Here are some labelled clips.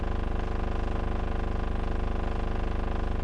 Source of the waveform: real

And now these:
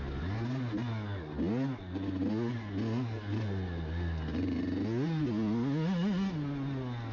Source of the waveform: real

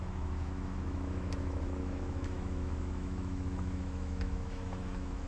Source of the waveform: fake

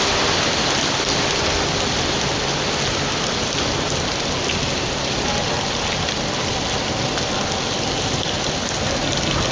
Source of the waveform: real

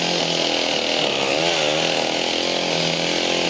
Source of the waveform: real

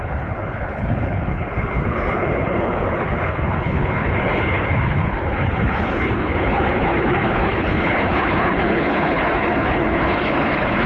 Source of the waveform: fake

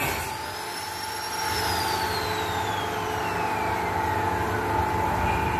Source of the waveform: real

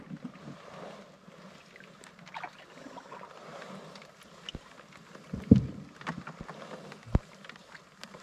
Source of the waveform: real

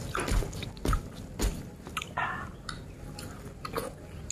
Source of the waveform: real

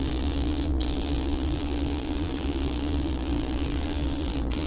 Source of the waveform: fake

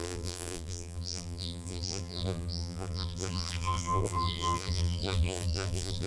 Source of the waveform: fake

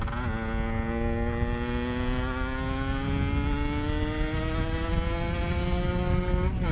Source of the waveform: real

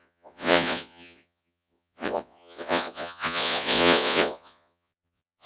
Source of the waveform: fake